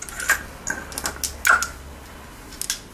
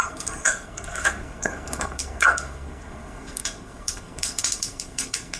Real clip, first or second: first